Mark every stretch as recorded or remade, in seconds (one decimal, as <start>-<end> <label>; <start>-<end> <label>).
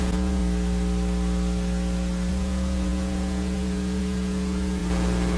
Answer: 0.0-0.4 remade; 0.4-2.3 recorded; 2.3-4.8 remade; 4.8-5.4 recorded